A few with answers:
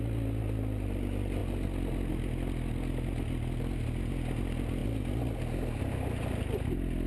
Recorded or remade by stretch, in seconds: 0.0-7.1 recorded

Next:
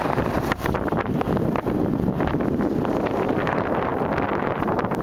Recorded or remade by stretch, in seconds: 0.0-3.9 remade; 3.9-4.4 recorded; 4.4-5.0 remade